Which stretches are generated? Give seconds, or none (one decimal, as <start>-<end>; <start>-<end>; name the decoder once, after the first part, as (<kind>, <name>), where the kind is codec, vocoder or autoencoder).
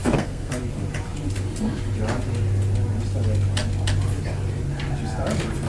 0.0-0.5 (codec, SNAC)